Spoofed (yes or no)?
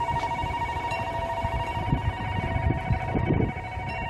no